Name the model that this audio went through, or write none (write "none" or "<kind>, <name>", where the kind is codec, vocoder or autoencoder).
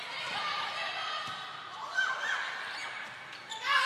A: none